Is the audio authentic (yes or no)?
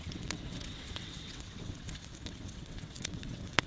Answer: no